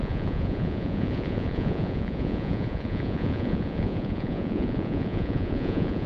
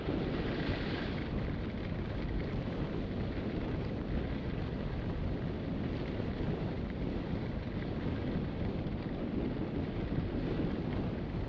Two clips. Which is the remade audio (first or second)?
first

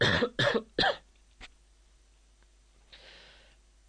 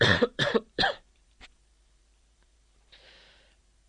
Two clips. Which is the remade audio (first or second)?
second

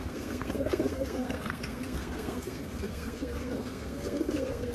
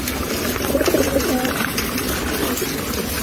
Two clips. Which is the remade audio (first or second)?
first